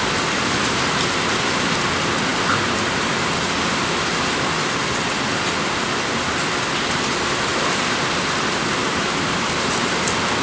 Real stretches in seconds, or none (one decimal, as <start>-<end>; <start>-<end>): 0.0-7.5; 8.3-8.8; 9.8-10.4